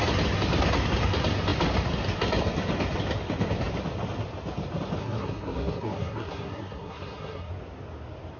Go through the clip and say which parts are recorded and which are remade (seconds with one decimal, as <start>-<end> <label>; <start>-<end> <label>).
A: 0.0-5.0 recorded; 5.0-7.5 remade; 7.5-8.4 recorded